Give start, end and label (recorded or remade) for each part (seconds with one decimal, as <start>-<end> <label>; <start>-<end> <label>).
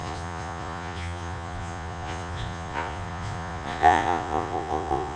0.0-5.2 remade